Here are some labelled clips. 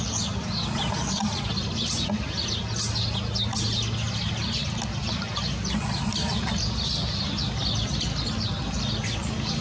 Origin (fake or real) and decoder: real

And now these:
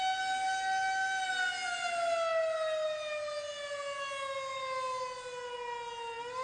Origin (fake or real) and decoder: real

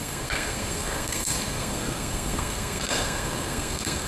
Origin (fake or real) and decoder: fake, codec, SNAC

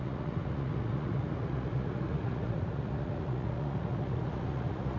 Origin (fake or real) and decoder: fake, vocoder, Vocos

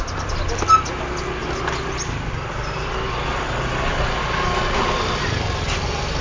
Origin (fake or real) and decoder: real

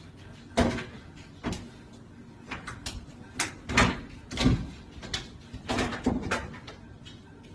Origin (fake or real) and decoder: real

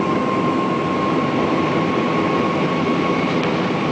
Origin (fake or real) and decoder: real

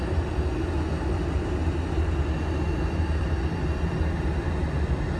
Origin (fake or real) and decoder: real